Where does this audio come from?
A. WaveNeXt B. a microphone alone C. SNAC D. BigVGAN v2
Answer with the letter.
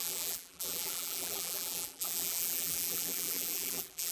D